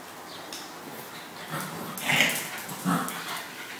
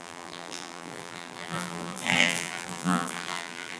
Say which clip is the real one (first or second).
first